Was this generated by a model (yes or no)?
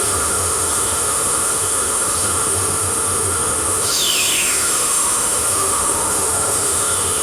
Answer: yes